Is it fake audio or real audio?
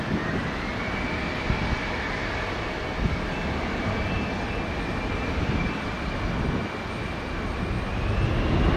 real